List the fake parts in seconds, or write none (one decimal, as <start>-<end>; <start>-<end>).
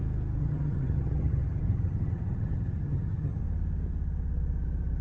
0.4-3.4